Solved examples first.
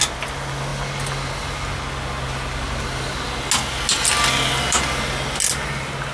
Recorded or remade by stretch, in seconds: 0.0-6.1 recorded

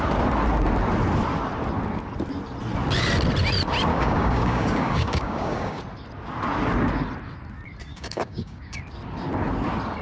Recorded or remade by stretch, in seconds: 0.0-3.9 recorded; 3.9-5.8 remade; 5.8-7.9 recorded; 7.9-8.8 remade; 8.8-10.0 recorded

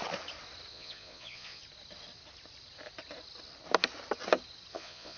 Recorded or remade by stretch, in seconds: 0.0-0.7 recorded; 0.7-1.6 remade; 1.6-4.7 recorded; 4.7-5.2 remade

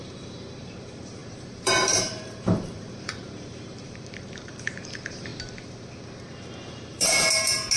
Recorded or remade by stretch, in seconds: 0.0-5.3 remade; 5.3-7.8 recorded